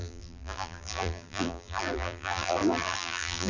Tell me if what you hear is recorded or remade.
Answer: remade